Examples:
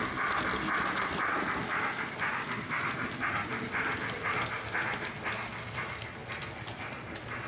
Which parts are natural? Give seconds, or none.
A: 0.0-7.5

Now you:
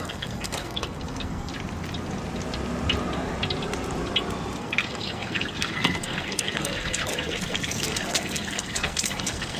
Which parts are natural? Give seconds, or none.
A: 1.5-4.6